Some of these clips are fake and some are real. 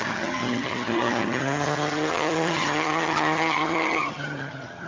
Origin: fake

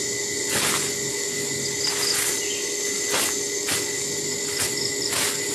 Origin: real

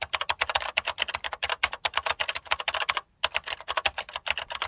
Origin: real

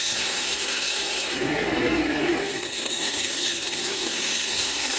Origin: fake